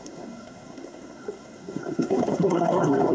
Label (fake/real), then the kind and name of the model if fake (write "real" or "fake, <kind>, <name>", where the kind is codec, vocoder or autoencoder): fake, codec, SNAC